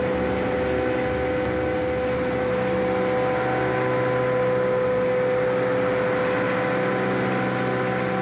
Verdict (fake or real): real